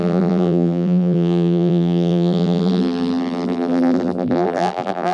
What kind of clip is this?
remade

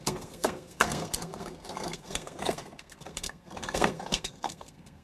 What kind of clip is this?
remade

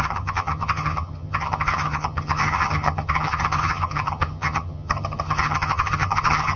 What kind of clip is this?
remade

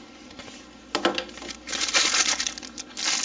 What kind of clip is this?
recorded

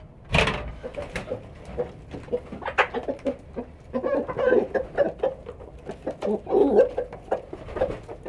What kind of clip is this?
recorded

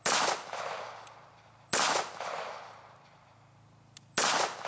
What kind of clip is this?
recorded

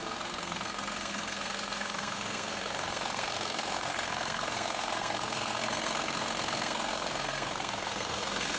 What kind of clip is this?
remade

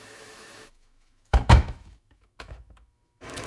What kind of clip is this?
remade